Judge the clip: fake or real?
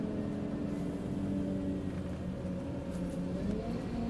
real